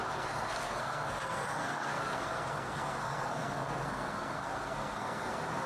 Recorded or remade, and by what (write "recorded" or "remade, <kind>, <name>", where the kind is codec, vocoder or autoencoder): remade, codec, SNAC